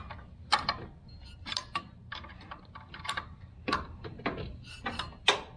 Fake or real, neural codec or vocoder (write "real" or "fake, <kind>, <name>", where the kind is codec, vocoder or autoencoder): real